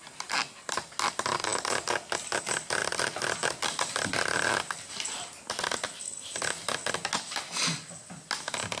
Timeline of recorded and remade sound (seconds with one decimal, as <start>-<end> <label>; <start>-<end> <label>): 0.0-8.8 recorded